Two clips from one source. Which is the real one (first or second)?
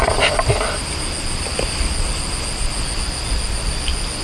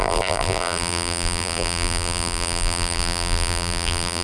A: first